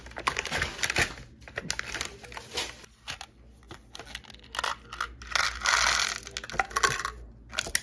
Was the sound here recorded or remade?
recorded